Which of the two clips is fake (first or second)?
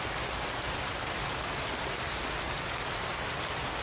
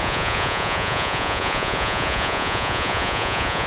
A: second